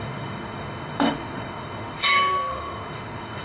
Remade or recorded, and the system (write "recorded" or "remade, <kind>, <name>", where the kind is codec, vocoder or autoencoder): remade, autoencoder, DAC-VAE